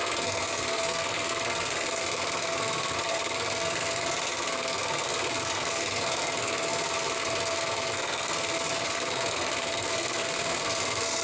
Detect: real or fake fake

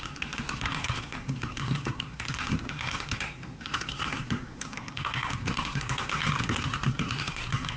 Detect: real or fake fake